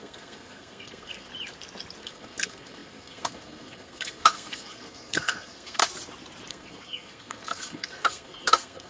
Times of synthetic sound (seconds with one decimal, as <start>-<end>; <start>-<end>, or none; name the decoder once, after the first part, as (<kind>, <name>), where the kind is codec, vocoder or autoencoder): 0.0-1.3 (codec, SNAC); 2.0-5.8; 6.5-8.9